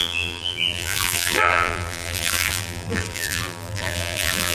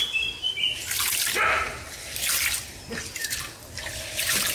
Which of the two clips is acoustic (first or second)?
second